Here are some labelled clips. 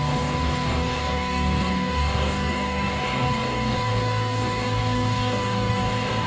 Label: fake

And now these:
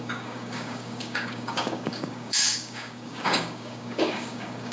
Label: fake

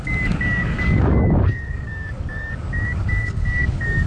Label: fake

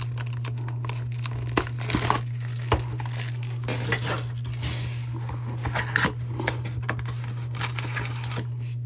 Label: real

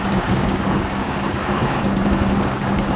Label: fake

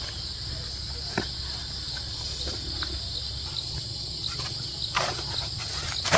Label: real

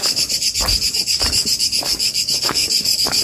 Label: fake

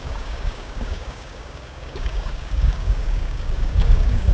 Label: fake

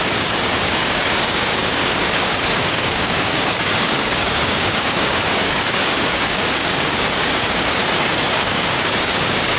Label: fake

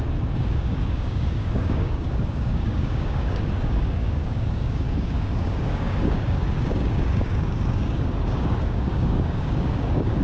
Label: fake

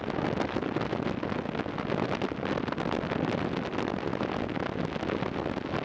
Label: real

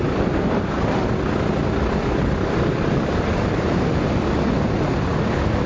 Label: real